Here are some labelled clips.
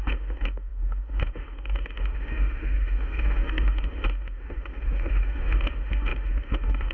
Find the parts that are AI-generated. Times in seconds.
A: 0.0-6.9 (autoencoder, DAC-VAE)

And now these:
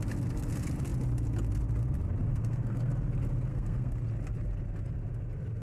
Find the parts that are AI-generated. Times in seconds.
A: 2.3-2.9 (codec, SNAC); 3.5-4.0